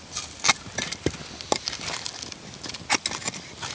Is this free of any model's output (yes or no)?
yes